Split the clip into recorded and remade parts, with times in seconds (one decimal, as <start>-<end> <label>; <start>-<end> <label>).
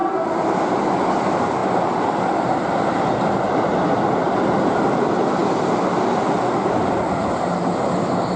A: 0.0-8.4 recorded